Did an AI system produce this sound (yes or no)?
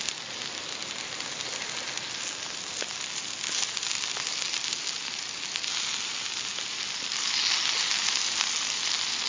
no